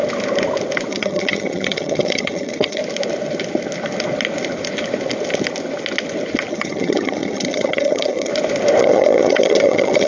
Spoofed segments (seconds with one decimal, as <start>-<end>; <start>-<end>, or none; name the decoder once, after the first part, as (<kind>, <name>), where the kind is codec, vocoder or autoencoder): 0.9-2.8 (vocoder, HiFi-GAN); 6.5-8.3; 8.8-10.1